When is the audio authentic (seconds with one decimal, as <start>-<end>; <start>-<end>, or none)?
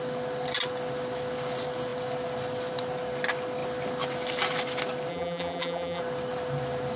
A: 0.0-5.1; 6.0-7.0